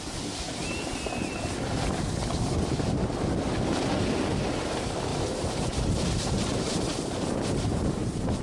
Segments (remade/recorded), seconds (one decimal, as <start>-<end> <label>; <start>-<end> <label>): 0.0-5.1 recorded; 5.1-7.9 remade; 7.9-8.4 recorded